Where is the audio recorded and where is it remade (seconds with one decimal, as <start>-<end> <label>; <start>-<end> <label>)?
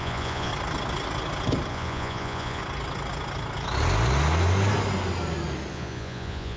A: 0.0-0.5 remade; 0.5-1.7 recorded; 1.7-2.6 remade; 2.6-5.7 recorded; 5.7-6.6 remade